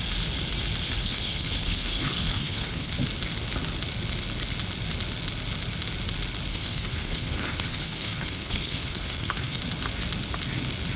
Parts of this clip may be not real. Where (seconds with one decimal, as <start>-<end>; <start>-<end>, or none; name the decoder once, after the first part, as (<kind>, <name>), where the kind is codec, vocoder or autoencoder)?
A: 1.0-2.9 (codec, HILCodec); 6.5-9.6